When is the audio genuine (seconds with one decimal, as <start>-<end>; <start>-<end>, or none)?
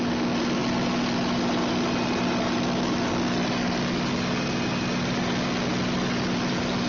0.0-6.9